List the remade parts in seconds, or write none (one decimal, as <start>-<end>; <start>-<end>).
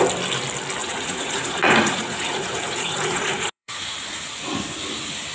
0.8-4.0